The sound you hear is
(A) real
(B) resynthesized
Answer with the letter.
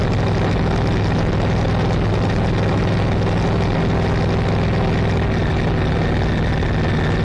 A